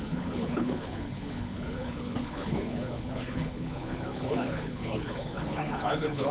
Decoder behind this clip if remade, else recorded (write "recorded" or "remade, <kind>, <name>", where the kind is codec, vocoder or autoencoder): remade, codec, HILCodec